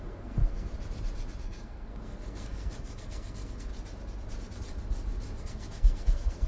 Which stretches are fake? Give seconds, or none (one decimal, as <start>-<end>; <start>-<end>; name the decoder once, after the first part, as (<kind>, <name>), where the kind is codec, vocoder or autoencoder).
0.0-0.7 (codec, SNAC); 1.4-3.7; 5.4-6.5